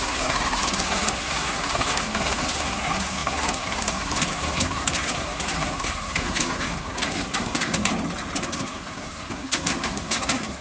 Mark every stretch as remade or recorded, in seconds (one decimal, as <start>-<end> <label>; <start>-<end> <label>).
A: 0.0-7.9 remade; 7.9-8.4 recorded; 8.4-10.6 remade